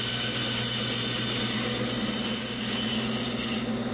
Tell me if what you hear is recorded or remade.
recorded